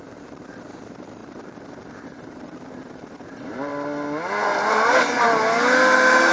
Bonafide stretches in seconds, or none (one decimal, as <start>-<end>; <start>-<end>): 3.7-6.3